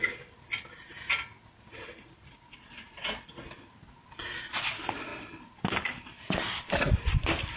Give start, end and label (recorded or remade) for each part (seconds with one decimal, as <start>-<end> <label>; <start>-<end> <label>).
0.0-7.6 recorded